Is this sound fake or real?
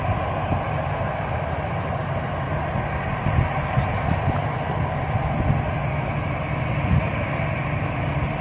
real